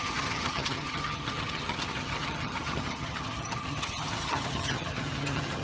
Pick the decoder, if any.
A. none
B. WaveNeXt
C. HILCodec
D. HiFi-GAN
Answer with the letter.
D